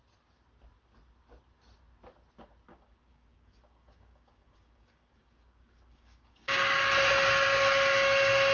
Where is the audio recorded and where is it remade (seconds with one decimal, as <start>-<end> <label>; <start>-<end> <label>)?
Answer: 0.0-2.7 recorded; 2.7-6.8 remade; 6.8-8.5 recorded